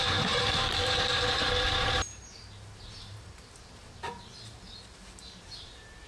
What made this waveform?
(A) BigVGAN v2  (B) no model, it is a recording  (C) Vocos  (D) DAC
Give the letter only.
A